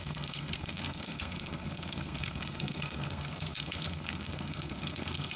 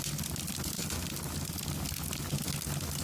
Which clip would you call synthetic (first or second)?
first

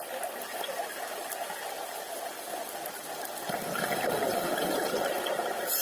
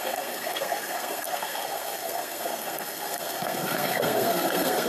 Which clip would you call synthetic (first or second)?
second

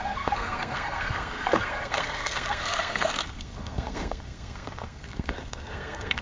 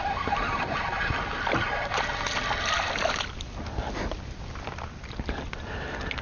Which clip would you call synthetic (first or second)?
first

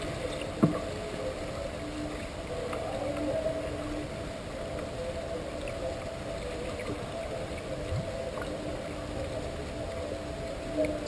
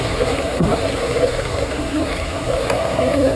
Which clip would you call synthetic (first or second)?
second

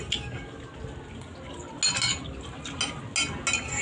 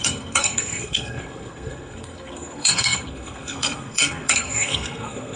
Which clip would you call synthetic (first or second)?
second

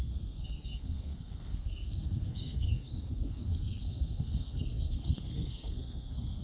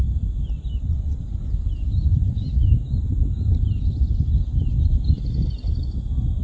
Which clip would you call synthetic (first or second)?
first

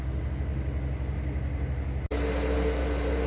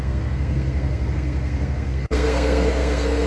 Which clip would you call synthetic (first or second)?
second